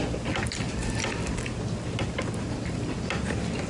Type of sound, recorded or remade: recorded